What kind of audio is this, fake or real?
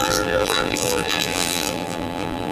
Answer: fake